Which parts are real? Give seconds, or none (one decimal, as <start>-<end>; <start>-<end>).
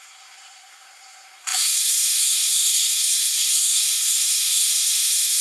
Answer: none